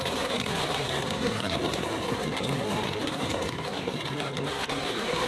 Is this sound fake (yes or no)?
yes